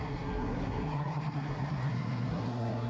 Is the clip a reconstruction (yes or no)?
yes